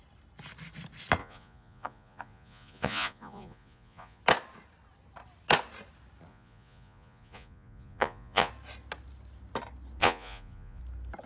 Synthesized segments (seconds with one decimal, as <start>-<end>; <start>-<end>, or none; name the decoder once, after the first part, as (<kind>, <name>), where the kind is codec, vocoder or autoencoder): 1.2-4.2 (vocoder, Vocos); 6.3-8.5; 10.0-10.8